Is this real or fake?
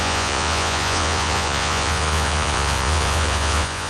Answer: fake